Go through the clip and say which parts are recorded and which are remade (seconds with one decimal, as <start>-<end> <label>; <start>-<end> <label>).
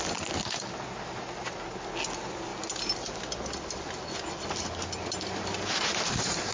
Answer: 0.0-6.5 recorded